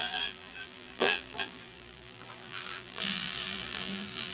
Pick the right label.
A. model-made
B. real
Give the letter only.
A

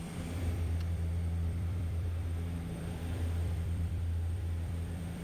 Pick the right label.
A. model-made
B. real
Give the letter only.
A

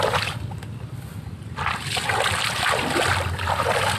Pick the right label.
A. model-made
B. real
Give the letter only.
B